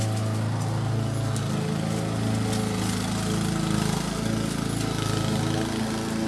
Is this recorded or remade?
recorded